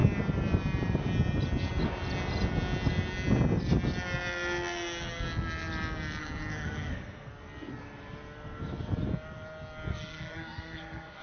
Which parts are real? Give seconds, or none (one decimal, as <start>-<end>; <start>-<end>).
0.0-6.2; 7.3-9.9